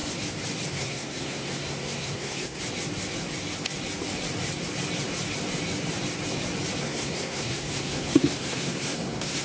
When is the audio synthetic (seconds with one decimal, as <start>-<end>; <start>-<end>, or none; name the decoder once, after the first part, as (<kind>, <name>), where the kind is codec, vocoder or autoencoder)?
0.7-2.6 (codec, SNAC); 6.8-9.4